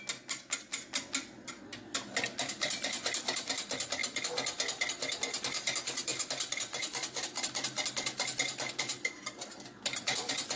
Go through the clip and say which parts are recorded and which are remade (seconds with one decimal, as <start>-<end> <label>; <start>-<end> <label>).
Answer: 0.0-10.6 recorded